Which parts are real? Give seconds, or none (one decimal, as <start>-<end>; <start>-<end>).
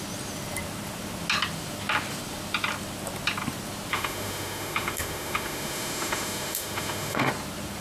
0.0-3.9; 7.3-7.8